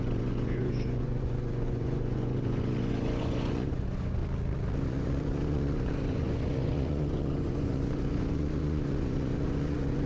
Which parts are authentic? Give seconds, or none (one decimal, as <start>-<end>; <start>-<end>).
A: 4.2-4.8